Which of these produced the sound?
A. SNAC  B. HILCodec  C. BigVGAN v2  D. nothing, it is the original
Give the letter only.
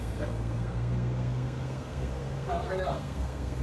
A